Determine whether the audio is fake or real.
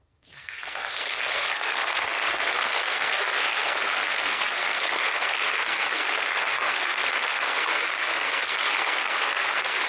fake